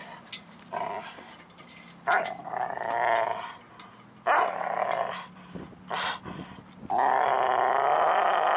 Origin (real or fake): real